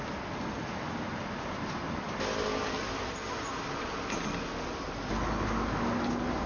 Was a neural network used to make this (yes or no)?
no